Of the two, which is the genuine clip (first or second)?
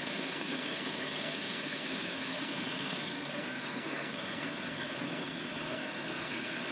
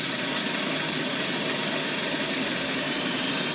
second